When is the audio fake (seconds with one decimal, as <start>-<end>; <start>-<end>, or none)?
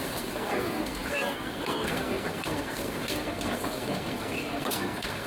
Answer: 0.0-5.3